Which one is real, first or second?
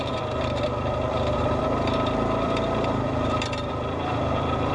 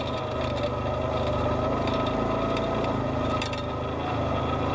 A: second